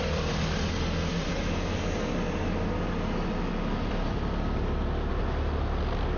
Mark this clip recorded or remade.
recorded